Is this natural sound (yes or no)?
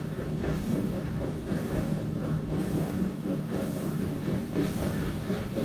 no